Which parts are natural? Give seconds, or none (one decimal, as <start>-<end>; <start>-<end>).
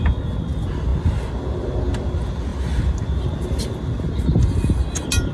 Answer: 0.0-5.3